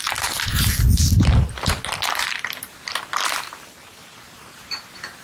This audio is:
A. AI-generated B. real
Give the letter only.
A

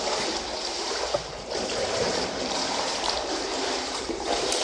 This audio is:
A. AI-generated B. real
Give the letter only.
A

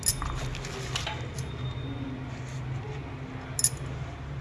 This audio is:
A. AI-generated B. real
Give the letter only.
B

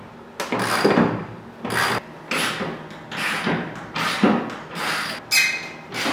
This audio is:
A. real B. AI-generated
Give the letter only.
A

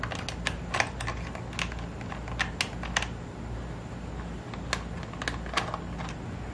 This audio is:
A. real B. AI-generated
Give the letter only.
A